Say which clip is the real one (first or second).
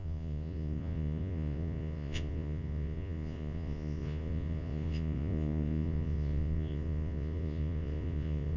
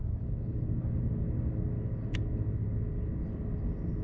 second